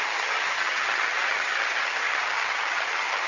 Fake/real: fake